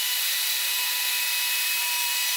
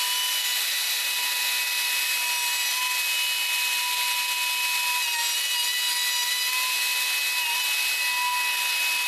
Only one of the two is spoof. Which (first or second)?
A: first